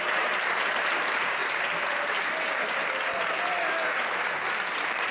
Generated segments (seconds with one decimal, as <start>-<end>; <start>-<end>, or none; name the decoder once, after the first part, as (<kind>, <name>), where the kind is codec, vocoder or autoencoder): 0.0-1.4 (vocoder, BigVGAN v2); 4.5-5.1